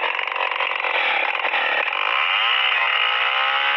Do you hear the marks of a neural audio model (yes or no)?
no